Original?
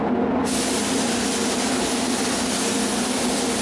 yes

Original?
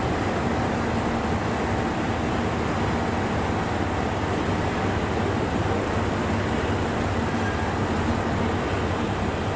yes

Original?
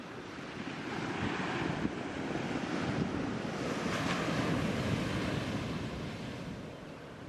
yes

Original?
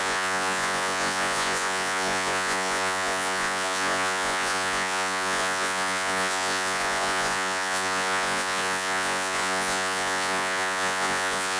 no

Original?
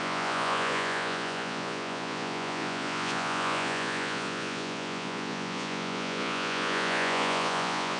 no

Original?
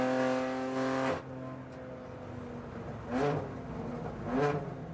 yes